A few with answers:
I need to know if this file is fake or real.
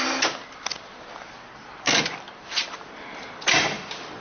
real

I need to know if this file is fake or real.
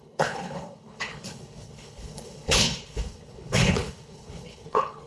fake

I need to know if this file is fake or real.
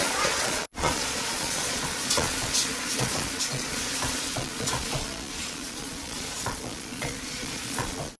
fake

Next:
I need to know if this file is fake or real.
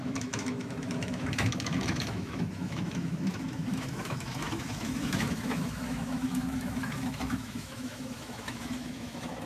fake